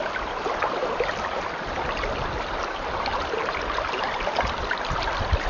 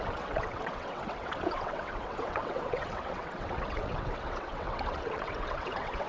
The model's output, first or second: second